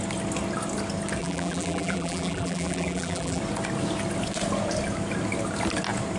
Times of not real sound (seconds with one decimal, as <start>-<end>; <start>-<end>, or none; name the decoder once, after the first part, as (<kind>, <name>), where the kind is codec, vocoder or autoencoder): 1.2-3.4 (vocoder, BigVGAN v2)